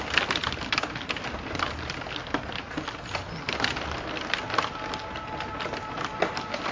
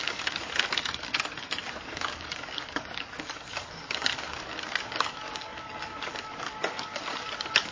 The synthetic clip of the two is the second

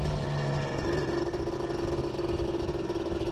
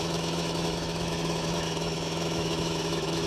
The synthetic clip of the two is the second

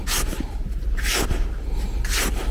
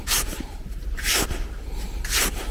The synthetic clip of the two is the second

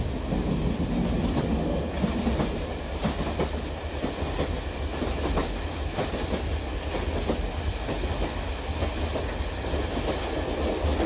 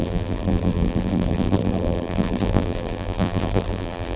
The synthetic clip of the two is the second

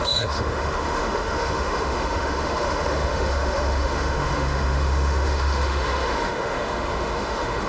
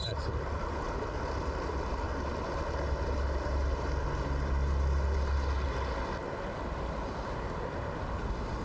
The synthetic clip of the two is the first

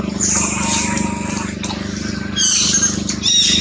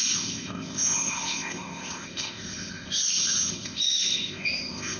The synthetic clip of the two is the second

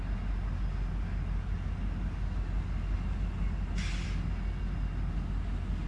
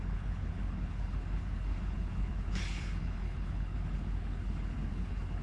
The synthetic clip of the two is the second